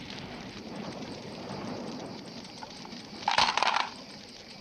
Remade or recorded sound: remade